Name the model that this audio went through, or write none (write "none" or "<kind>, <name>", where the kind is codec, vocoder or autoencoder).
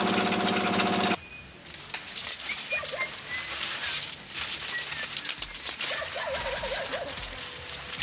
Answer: none